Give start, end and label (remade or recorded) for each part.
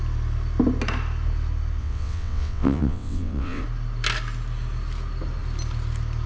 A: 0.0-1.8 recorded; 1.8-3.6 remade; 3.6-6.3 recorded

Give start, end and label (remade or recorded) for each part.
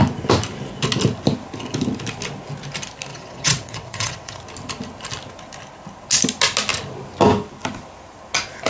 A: 0.0-3.1 recorded; 3.1-4.4 remade; 4.4-8.7 recorded